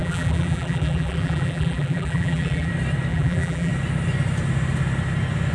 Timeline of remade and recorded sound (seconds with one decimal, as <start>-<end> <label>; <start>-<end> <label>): 0.0-2.7 remade; 2.7-3.1 recorded; 3.1-3.7 remade; 3.7-5.5 recorded